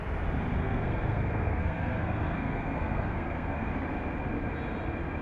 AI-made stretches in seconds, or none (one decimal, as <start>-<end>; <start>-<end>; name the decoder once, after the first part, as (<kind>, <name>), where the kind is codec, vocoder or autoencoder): 0.6-3.7 (codec, SNAC)

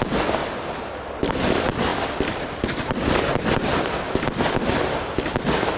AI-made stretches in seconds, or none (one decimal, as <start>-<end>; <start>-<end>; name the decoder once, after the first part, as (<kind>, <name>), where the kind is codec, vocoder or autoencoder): none

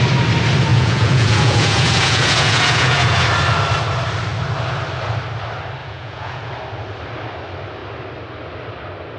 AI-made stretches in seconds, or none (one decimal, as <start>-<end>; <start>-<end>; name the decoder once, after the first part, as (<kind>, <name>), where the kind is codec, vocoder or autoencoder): 0.7-3.2 (vocoder, Vocos); 5.8-6.5

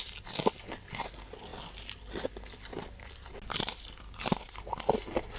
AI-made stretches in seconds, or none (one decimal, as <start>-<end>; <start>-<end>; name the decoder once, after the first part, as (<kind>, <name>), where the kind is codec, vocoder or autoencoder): none

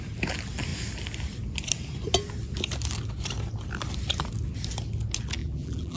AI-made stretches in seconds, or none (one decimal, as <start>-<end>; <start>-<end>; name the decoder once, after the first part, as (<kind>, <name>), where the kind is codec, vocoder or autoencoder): 5.4-6.0 (vocoder, BigVGAN v2)

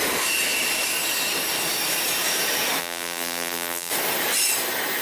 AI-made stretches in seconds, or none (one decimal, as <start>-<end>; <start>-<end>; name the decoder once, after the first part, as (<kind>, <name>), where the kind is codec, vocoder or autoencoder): 2.8-3.9 (vocoder, BigVGAN v2)